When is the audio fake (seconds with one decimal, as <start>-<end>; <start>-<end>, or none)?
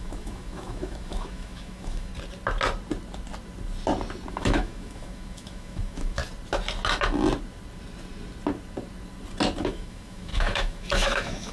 0.0-2.1; 4.3-6.2; 9.6-11.5